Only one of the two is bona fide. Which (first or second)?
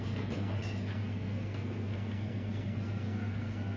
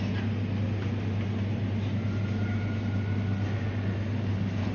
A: second